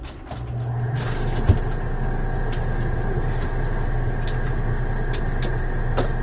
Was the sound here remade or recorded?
recorded